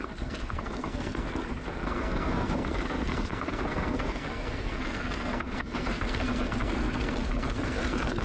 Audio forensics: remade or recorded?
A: remade